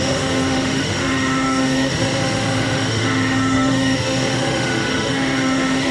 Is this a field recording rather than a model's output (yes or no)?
no